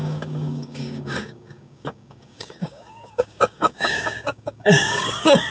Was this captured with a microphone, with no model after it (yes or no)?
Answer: no